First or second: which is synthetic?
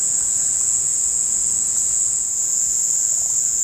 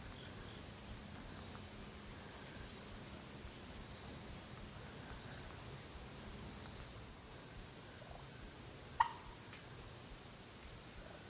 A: first